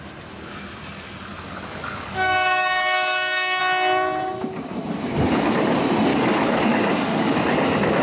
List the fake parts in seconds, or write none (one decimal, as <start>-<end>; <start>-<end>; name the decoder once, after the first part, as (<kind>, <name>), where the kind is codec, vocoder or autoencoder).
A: 1.3-3.6 (codec, DAC); 6.1-7.3